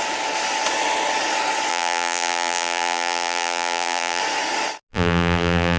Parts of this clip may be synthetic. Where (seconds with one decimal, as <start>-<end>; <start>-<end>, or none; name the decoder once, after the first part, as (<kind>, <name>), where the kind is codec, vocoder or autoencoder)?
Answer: 1.7-4.2 (vocoder, BigVGAN v2); 4.9-5.8